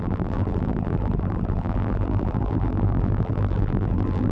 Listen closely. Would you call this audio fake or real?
fake